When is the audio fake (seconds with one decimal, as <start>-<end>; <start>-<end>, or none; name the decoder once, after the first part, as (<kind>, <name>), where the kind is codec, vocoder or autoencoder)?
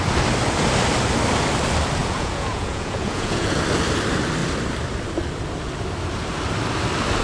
2.0-3.6 (vocoder, Vocos)